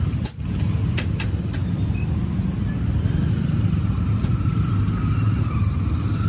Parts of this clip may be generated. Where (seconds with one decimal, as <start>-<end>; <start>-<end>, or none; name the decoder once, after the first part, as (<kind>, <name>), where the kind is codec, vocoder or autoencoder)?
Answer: none